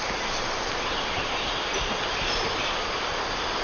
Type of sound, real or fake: real